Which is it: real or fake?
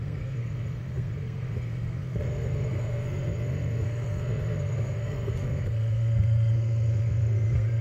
fake